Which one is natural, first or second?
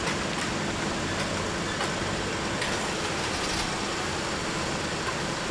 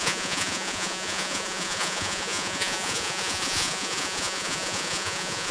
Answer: first